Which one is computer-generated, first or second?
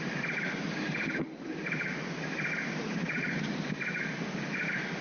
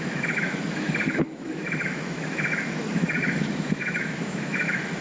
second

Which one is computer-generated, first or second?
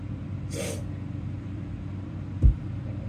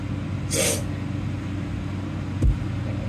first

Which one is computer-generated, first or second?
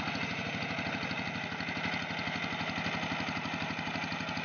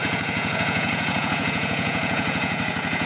second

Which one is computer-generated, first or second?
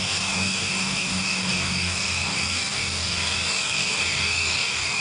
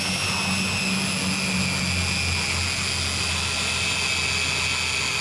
first